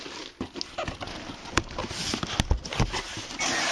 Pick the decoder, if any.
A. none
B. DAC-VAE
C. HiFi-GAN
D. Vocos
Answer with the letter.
A